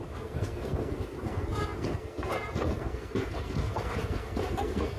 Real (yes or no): no